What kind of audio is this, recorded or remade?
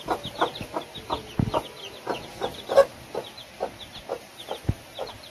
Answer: recorded